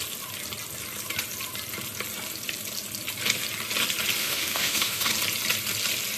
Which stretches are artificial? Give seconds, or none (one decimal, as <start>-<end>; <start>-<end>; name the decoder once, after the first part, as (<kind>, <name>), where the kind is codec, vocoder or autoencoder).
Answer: 4.2-5.1 (autoencoder, DAC-VAE)